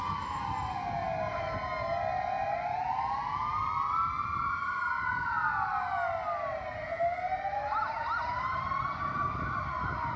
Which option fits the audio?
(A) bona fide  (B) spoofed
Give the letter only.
A